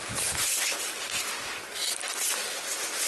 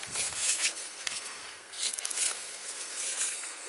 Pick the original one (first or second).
first